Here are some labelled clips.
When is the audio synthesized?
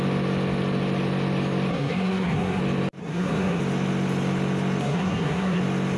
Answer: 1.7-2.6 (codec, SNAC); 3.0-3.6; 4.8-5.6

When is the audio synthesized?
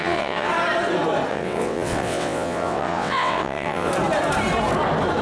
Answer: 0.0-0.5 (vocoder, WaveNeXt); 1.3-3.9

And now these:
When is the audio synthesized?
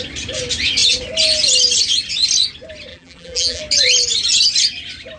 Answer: 2.9-3.6 (vocoder, BigVGAN v2)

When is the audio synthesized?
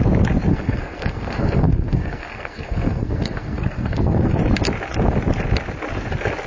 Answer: 0.5-4.4 (codec, SNAC)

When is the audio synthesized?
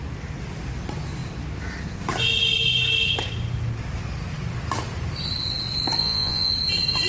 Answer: 6.0-6.5 (vocoder, Vocos)